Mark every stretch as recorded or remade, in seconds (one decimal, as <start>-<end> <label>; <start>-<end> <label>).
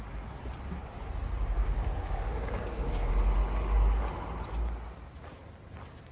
0.0-1.6 recorded; 1.6-3.1 remade; 3.1-6.1 recorded